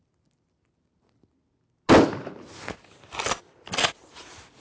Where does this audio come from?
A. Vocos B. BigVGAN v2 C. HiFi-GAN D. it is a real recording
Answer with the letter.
D